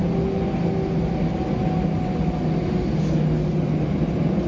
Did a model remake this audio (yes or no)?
no